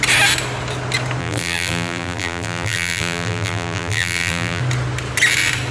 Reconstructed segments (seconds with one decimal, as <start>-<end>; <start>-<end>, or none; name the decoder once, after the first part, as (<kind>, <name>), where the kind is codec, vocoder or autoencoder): 1.2-4.6 (vocoder, BigVGAN v2)